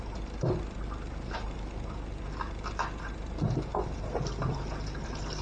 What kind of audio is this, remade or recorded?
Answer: recorded